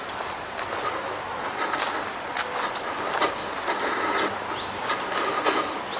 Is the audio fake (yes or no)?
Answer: no